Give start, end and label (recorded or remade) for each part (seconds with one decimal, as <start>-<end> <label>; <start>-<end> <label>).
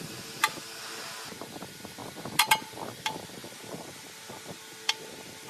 0.0-5.5 recorded